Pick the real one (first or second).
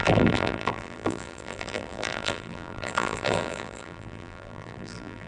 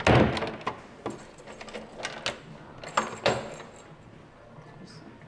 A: second